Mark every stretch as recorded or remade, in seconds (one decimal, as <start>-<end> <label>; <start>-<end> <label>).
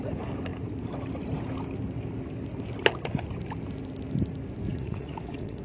0.0-4.7 recorded; 4.7-5.6 remade